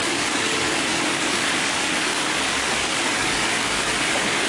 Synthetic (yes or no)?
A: yes